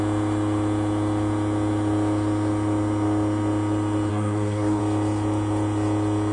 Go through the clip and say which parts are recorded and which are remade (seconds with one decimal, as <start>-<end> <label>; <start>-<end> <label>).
0.0-4.1 recorded; 4.1-4.8 remade; 4.8-6.3 recorded